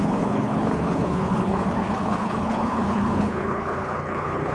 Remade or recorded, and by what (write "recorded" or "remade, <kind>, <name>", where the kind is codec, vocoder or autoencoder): remade, codec, HILCodec